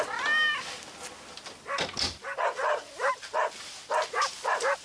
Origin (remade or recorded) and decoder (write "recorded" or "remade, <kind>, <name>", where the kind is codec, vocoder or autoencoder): recorded